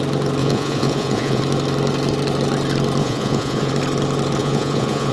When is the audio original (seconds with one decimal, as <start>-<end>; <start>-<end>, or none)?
0.0-0.4; 1.4-3.0; 3.7-4.4